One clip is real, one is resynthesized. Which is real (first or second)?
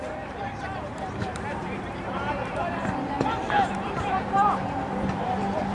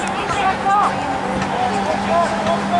second